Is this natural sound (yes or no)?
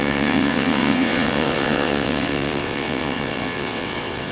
no